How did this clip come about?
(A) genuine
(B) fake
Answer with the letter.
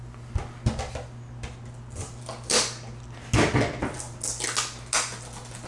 A